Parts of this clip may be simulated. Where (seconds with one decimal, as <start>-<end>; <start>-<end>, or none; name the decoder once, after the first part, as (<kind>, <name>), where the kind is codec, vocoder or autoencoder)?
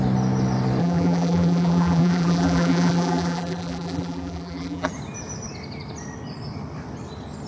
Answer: 0.8-4.9 (vocoder, BigVGAN v2)